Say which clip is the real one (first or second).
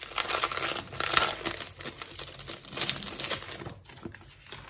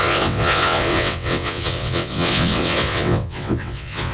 first